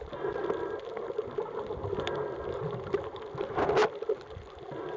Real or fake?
real